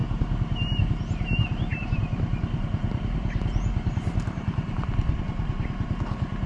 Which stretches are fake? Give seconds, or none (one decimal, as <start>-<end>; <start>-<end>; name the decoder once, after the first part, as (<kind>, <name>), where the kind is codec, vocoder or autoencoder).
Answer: 1.7-5.2 (vocoder, BigVGAN v2)